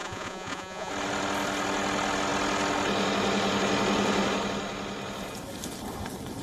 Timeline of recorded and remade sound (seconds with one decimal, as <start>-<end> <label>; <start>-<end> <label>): 0.0-0.9 remade; 0.9-6.4 recorded